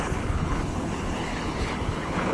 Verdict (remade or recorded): remade